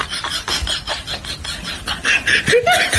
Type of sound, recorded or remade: recorded